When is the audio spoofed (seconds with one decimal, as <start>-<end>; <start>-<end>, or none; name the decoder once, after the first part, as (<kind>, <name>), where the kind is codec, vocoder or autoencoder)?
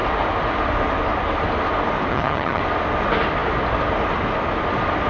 2.1-2.6 (vocoder, HiFi-GAN)